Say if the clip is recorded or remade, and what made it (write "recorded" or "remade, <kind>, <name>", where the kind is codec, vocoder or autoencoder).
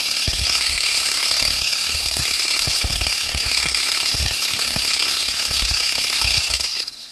remade, codec, SNAC